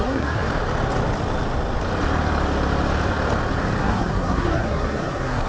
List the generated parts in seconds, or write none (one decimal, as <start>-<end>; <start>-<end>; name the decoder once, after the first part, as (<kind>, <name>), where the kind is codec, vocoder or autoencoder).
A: 0.0-0.5 (codec, SNAC); 3.8-5.5

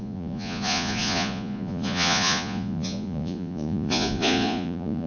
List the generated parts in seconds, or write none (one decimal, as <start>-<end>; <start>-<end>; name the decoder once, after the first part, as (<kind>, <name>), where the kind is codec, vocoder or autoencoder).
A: 0.0-5.1 (vocoder, Vocos)